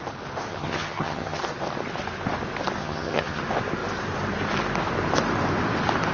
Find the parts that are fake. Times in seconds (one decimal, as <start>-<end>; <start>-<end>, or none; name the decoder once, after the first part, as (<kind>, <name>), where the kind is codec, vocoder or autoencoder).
0.5-1.4 (vocoder, HiFi-GAN); 2.8-3.4